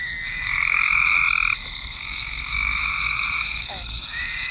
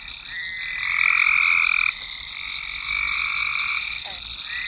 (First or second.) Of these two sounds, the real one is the second